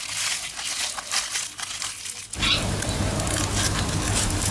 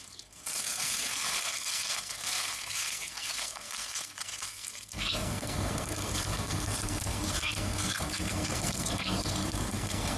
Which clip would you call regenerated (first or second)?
second